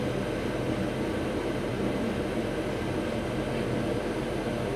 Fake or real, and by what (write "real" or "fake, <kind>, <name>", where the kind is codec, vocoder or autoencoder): real